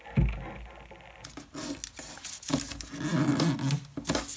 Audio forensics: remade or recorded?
recorded